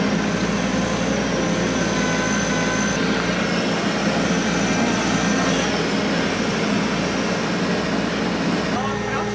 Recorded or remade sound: recorded